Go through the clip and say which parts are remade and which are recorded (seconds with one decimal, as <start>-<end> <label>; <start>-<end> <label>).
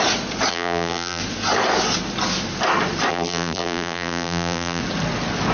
0.0-0.5 recorded; 0.5-1.2 remade; 1.2-3.1 recorded; 3.1-4.8 remade; 4.8-5.5 recorded